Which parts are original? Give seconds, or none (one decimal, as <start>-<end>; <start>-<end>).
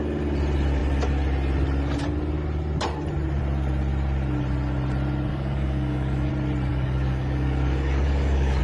0.0-5.3; 6.3-6.7